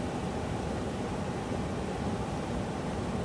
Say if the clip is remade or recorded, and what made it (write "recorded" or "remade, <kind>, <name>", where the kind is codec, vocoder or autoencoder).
recorded